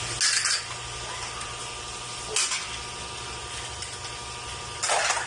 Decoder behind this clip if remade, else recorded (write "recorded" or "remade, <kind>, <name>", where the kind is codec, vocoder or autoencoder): recorded